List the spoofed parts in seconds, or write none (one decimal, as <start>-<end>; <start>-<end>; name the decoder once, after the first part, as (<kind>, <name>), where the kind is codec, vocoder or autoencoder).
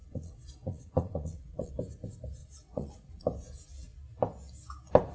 0.0-1.7 (vocoder, Vocos); 2.4-3.2